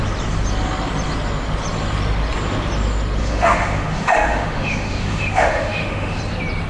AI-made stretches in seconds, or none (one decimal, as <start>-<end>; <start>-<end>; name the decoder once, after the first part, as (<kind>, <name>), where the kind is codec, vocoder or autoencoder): 3.2-6.2 (autoencoder, DAC-VAE)